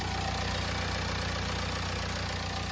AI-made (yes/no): no